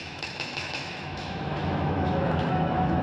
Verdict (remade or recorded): remade